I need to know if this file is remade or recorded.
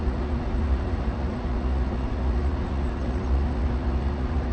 remade